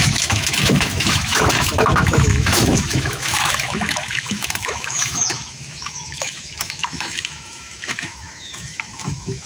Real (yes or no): no